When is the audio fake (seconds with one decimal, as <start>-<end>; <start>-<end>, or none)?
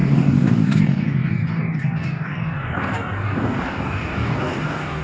0.0-5.0